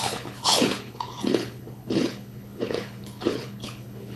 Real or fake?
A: fake